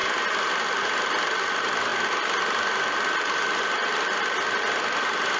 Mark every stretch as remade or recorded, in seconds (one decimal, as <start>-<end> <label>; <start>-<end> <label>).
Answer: 0.0-5.4 recorded